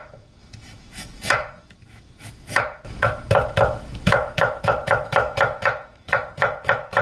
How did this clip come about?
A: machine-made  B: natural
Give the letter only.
A